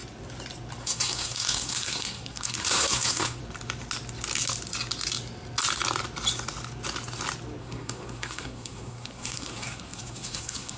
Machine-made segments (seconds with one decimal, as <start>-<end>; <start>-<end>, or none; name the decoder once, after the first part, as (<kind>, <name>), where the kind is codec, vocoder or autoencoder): 0.8-3.4 (codec, SNAC); 7.6-10.8